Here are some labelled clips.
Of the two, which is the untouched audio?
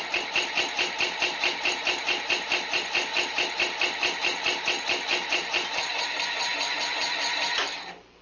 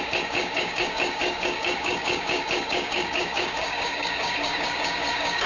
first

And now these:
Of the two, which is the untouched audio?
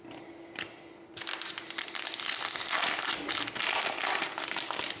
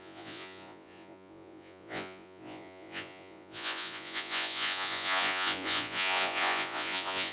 first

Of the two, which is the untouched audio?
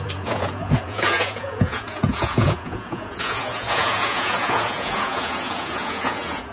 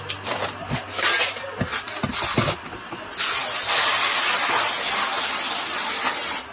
second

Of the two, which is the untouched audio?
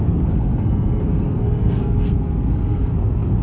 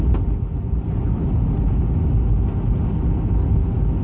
second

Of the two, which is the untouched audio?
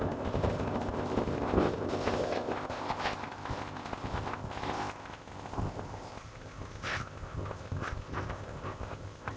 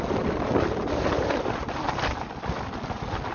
second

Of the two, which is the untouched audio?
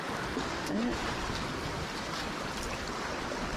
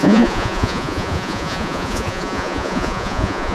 first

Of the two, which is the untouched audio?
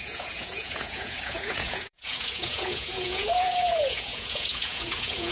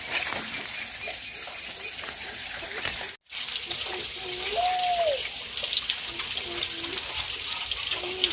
second